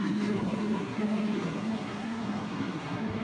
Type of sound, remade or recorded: remade